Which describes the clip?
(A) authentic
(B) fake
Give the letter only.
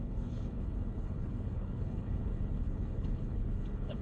B